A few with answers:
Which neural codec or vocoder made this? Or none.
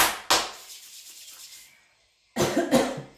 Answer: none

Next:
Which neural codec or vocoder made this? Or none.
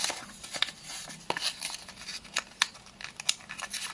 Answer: none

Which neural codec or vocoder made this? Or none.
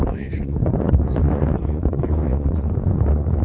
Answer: vocoder, Vocos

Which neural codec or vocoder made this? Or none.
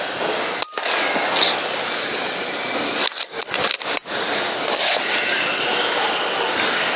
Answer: none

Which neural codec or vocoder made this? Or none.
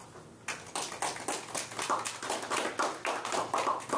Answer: none